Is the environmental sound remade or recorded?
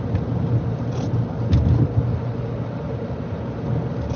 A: recorded